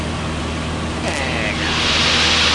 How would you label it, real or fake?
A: real